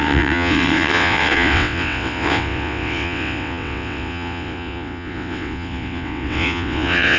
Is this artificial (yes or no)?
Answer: yes